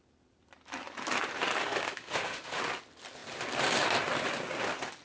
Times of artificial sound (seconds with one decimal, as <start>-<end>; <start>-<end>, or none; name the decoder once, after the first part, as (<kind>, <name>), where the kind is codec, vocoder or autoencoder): 1.6-2.6 (autoencoder, DAC-VAE)